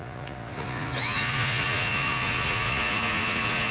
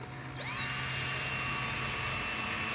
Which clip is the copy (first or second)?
first